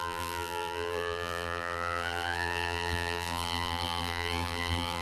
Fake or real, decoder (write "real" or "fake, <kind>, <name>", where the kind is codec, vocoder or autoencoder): fake, vocoder, BigVGAN v2